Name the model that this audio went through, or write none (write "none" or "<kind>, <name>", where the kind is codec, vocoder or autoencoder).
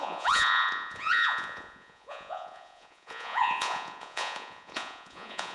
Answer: vocoder, Vocos